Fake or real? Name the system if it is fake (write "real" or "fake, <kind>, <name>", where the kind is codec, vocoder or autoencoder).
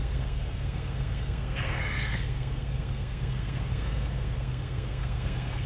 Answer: fake, codec, SNAC